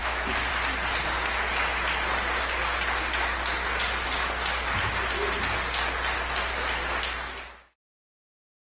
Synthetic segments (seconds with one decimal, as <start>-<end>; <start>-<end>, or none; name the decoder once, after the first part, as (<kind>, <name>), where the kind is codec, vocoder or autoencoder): 0.0-0.5 (autoencoder, DAC-VAE)